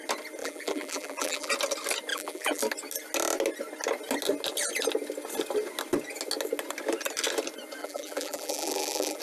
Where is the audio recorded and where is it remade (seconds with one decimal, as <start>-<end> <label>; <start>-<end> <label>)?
0.0-0.4 recorded; 0.4-1.5 remade; 1.5-2.1 recorded; 2.1-2.6 remade; 2.6-7.8 recorded; 7.8-9.2 remade